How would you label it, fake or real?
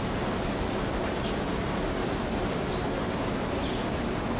real